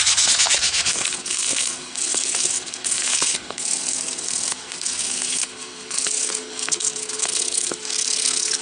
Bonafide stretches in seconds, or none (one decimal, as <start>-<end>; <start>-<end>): none